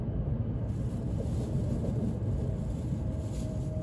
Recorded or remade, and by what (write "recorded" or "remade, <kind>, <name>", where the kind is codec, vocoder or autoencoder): recorded